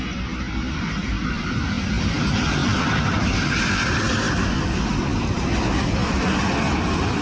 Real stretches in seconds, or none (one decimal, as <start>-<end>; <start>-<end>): 0.0-7.2